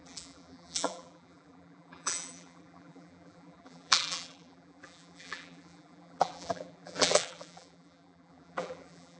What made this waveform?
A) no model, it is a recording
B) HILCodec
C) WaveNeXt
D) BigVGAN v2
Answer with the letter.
D